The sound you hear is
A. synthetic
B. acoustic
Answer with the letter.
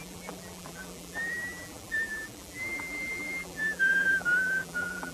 A